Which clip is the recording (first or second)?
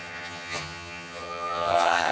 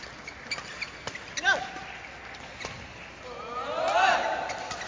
second